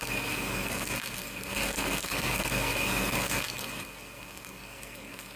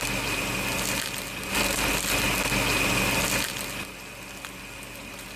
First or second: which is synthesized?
first